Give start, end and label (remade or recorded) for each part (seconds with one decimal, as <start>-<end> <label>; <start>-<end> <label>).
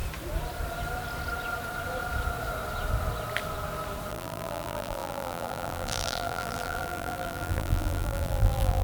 0.0-4.1 recorded; 4.1-8.8 remade